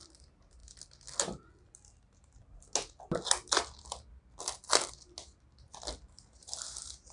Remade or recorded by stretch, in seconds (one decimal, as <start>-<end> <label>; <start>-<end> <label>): 0.0-7.1 recorded